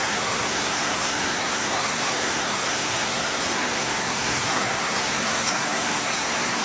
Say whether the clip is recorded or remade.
remade